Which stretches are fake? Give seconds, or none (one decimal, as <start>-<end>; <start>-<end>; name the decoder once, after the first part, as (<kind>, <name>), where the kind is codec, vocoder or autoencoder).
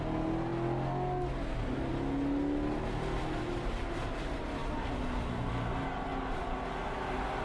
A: none